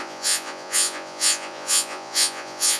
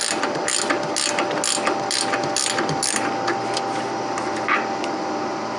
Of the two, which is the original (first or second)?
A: second